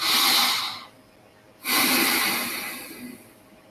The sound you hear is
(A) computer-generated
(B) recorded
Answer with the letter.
B